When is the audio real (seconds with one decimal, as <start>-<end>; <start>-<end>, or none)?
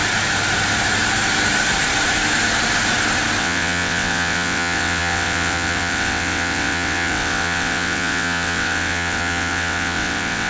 0.0-3.4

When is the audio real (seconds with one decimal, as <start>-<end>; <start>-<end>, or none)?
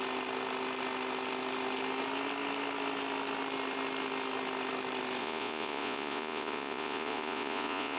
0.0-5.2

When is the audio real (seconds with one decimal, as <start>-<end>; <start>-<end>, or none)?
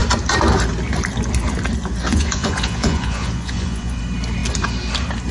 0.0-2.0; 4.0-5.3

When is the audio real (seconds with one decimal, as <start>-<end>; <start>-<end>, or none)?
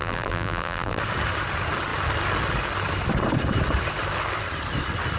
1.0-5.2